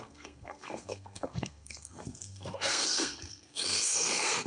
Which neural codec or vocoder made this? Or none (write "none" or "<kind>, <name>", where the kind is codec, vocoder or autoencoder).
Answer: codec, SNAC